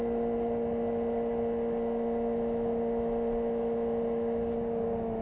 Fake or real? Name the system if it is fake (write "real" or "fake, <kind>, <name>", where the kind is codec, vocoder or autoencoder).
real